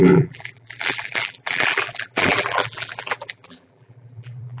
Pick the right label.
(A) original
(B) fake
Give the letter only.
B